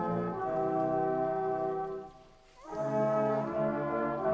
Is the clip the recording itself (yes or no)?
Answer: yes